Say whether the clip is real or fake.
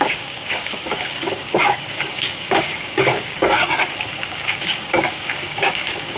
fake